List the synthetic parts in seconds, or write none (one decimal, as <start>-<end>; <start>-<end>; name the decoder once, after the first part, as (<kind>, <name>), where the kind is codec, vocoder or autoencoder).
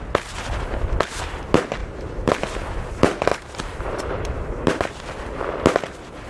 1.8-2.3 (vocoder, BigVGAN v2); 3.3-4.9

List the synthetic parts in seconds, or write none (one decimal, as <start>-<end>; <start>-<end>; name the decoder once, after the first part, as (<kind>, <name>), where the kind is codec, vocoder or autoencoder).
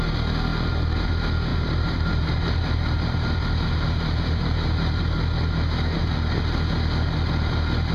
0.5-1.1 (vocoder, BigVGAN v2); 1.5-5.0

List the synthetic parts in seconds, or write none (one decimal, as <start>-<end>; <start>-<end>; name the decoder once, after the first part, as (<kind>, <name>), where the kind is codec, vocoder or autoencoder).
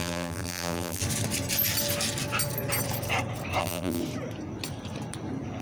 0.0-1.0 (vocoder, BigVGAN v2); 3.6-4.0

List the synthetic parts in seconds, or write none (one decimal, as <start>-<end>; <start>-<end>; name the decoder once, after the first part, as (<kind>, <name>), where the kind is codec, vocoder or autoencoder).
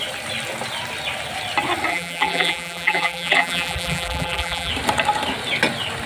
1.9-4.7 (vocoder, BigVGAN v2)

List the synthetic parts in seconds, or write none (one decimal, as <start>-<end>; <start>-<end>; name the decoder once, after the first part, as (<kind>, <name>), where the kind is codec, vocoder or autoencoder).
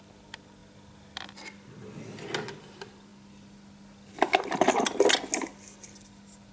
none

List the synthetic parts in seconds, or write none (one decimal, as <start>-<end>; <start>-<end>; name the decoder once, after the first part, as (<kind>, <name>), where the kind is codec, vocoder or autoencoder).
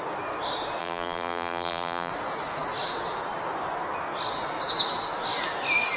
0.8-2.1 (vocoder, BigVGAN v2)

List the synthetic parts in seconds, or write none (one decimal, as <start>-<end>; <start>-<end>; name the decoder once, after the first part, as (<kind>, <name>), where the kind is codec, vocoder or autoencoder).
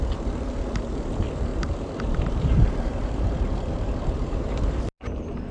1.5-4.8 (vocoder, BigVGAN v2)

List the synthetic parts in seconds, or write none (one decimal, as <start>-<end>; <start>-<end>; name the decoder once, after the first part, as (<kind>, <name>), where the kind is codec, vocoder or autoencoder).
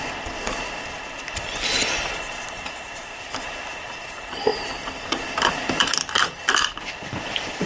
1.8-3.3 (vocoder, BigVGAN v2); 4.5-7.7